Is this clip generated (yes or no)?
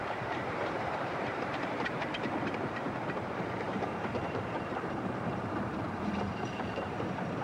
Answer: yes